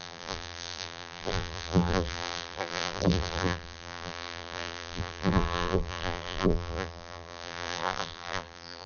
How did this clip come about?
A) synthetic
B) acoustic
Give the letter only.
A